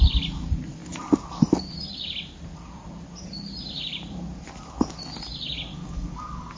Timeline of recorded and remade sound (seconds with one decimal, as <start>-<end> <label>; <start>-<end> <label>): 0.0-5.7 recorded; 5.7-6.6 remade